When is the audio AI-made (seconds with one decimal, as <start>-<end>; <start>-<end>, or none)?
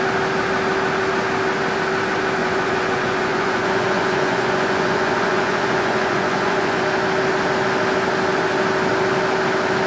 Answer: 2.4-6.8